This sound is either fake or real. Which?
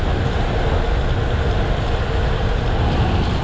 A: real